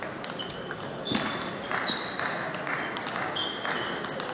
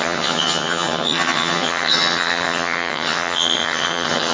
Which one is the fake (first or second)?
second